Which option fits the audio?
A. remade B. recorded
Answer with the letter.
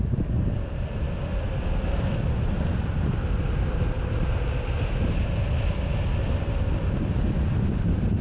B